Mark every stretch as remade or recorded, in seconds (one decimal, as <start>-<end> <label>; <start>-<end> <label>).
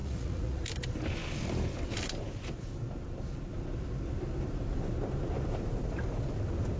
0.0-0.6 remade; 0.6-6.8 recorded